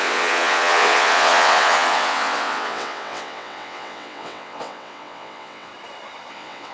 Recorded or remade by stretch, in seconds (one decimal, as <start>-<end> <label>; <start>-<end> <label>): 0.0-5.7 remade; 5.7-6.3 recorded; 6.3-6.7 remade